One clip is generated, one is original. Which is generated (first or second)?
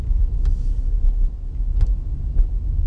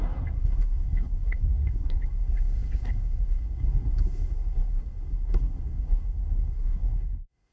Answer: second